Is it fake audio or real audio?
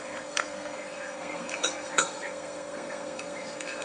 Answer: fake